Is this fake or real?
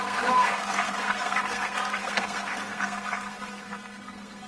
fake